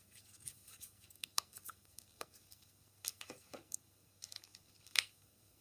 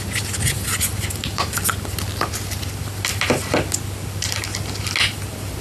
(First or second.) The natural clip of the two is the second